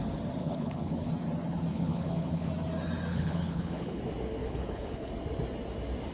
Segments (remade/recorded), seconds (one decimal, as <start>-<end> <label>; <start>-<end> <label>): 0.0-0.4 recorded; 0.4-1.1 remade; 1.1-1.7 recorded; 1.7-2.5 remade; 2.5-3.1 recorded; 3.1-4.0 remade; 4.0-4.4 recorded; 4.4-5.1 remade; 5.1-6.1 recorded